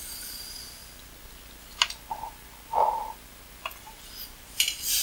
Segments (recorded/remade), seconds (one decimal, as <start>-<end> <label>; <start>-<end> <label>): 0.0-0.8 remade; 0.8-3.8 recorded; 3.8-5.0 remade